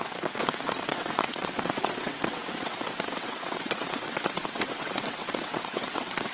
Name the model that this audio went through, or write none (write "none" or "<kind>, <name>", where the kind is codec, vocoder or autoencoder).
vocoder, WaveNeXt